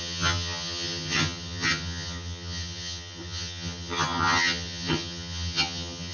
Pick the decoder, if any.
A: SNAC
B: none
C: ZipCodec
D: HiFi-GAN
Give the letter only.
D